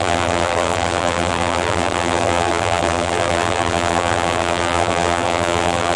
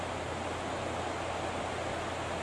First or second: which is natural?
second